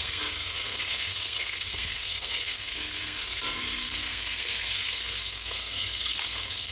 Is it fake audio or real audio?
fake